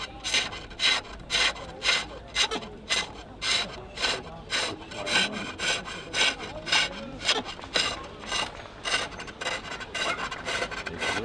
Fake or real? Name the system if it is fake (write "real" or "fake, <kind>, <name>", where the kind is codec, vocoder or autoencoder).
real